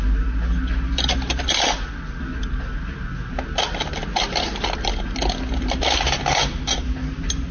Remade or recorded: recorded